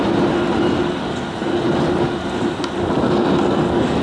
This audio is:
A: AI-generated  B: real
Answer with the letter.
B